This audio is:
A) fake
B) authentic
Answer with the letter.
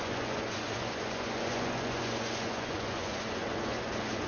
A